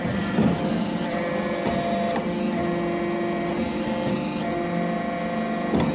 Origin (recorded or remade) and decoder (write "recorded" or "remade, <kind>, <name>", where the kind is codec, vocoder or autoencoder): recorded